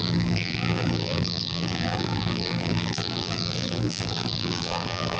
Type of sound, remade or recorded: remade